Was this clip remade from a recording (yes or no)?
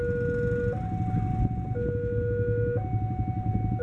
no